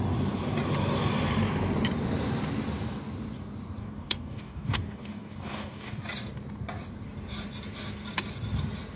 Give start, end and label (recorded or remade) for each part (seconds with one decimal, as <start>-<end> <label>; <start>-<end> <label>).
0.0-3.8 recorded; 3.8-6.0 remade; 6.0-9.0 recorded